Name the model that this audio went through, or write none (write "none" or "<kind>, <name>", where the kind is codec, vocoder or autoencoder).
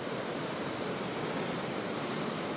vocoder, BigVGAN v2